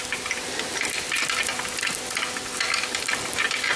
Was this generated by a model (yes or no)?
no